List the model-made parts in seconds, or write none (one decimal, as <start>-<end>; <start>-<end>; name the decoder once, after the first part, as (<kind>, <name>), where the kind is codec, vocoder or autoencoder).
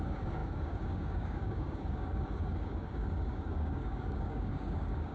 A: 0.0-5.1 (codec, DAC)